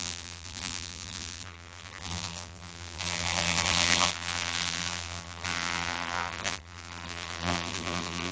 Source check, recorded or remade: remade